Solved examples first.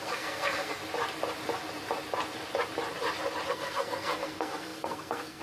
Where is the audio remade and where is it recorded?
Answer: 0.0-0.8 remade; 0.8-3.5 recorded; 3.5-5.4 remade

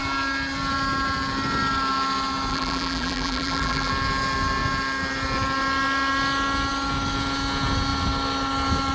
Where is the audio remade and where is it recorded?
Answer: 0.0-2.5 recorded; 2.5-3.9 remade; 3.9-8.9 recorded

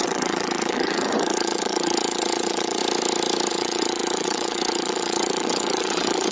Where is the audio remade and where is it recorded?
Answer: 0.0-2.8 remade; 2.8-3.5 recorded; 3.5-6.3 remade

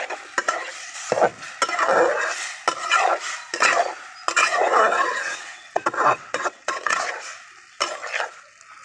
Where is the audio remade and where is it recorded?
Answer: 0.0-4.4 recorded; 4.4-7.1 remade; 7.1-8.8 recorded

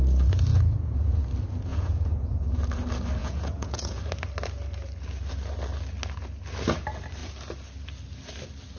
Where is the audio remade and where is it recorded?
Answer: 0.0-0.5 recorded; 0.5-1.2 remade; 1.2-1.7 recorded; 1.7-2.6 remade; 2.6-3.2 recorded; 3.2-4.0 remade; 4.0-8.8 recorded

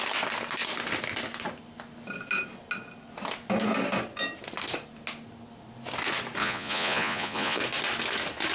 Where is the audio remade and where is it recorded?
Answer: 0.0-6.4 recorded; 6.4-7.6 remade; 7.6-8.5 recorded